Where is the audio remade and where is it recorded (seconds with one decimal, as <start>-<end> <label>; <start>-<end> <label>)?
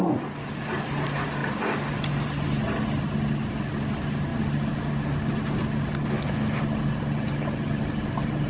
0.0-8.5 recorded